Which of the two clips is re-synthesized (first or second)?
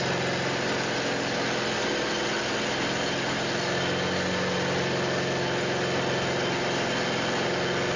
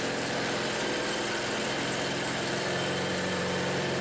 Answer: second